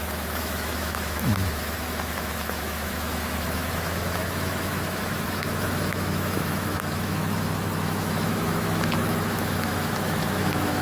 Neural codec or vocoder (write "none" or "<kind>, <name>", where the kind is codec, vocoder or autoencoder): autoencoder, DAC-VAE